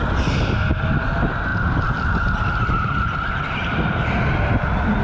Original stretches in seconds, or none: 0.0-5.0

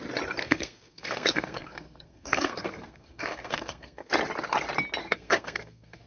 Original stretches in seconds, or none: 0.0-0.4; 4.1-5.0